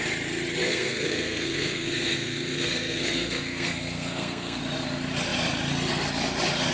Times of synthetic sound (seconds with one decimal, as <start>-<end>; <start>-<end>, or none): 0.6-4.6